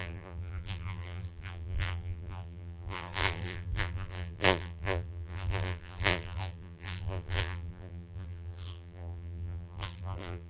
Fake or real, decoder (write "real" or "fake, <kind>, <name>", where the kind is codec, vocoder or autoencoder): fake, vocoder, BigVGAN v2